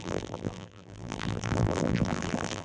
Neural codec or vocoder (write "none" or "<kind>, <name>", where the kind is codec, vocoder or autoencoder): vocoder, BigVGAN v2